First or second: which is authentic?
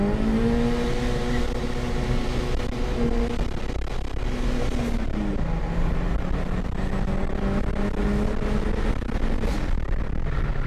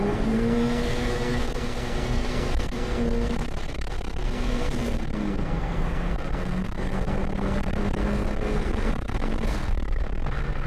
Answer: first